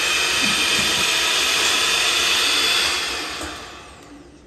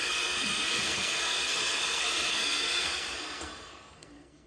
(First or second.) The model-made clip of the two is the second